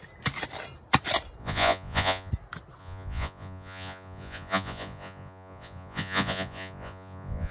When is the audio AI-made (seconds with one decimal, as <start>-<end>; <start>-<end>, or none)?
1.4-2.3; 2.8-7.5